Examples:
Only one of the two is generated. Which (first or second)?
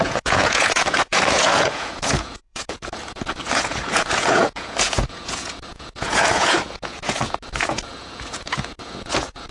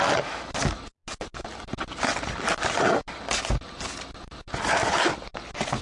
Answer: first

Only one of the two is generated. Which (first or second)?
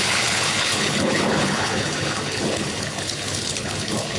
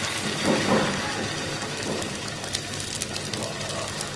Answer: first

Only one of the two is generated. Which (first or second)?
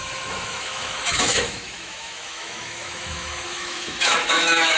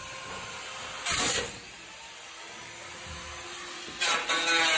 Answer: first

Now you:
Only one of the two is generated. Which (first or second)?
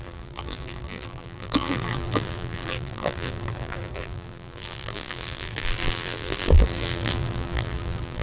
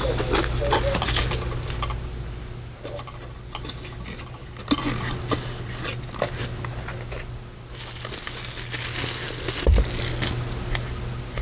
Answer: first